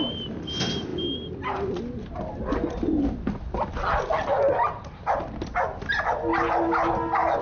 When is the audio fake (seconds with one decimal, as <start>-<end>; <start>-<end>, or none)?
none